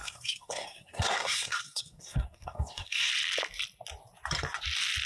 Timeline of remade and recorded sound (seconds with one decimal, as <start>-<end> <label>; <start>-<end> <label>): 0.0-3.1 remade; 3.1-5.1 recorded